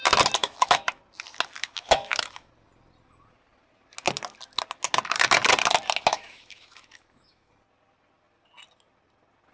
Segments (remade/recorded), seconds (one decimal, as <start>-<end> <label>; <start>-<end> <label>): 0.0-0.4 recorded; 0.4-1.0 remade; 1.0-1.6 recorded; 1.6-2.5 remade; 2.5-6.1 recorded; 6.1-7.5 remade; 7.5-9.5 recorded